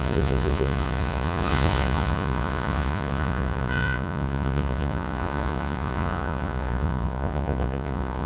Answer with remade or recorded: remade